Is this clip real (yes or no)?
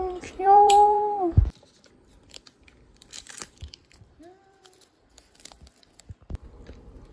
no